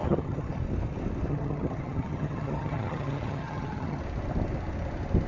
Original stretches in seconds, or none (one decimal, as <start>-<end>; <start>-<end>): 0.6-1.3; 4.0-5.3